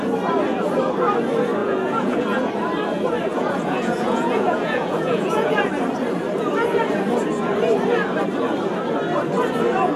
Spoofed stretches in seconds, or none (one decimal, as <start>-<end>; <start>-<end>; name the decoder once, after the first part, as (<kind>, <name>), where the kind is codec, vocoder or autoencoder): 1.6-2.5 (vocoder, Vocos); 3.3-5.6